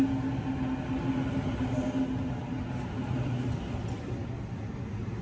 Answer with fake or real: real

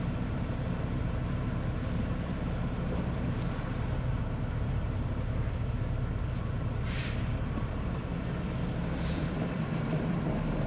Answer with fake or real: fake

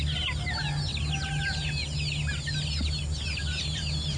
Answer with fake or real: real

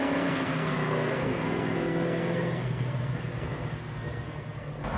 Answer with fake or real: fake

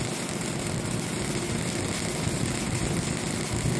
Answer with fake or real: real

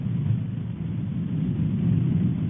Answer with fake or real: real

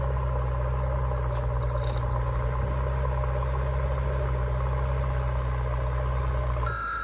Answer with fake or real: real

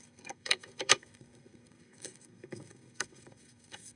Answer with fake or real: fake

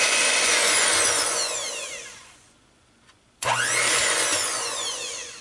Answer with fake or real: fake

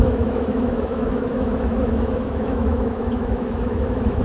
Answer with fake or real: fake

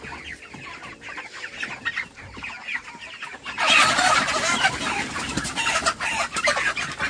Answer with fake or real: real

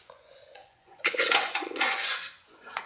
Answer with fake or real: fake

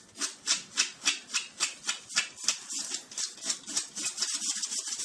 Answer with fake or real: real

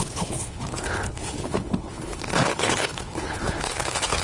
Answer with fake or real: fake